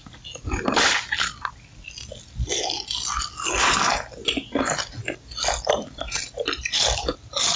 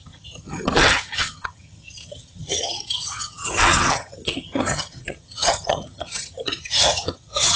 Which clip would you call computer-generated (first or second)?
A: second